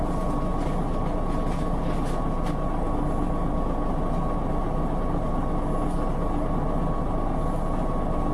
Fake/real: real